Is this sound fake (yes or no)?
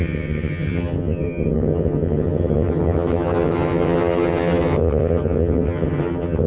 yes